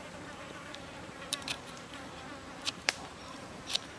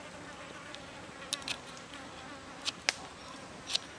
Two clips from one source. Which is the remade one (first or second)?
first